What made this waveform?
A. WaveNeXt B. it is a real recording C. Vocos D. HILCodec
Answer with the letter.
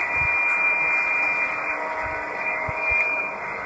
B